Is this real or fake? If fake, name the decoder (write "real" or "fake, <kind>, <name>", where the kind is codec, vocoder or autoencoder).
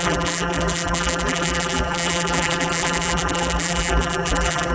fake, vocoder, BigVGAN v2